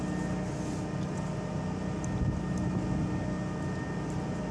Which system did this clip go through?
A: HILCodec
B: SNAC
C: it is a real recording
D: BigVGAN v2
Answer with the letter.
C